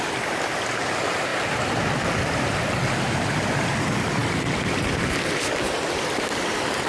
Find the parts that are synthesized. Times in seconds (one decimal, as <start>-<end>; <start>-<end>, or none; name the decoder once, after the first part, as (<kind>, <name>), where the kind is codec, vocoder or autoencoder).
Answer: 1.3-1.8 (vocoder, BigVGAN v2)